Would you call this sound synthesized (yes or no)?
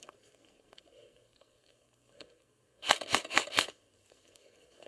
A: yes